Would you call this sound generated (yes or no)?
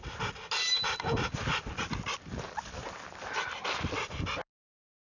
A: no